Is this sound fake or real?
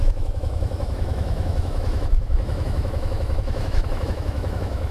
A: fake